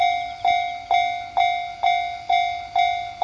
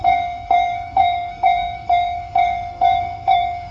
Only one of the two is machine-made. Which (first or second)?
second